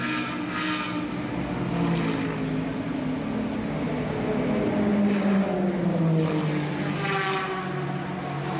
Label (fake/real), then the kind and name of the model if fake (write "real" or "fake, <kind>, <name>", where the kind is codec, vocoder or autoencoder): real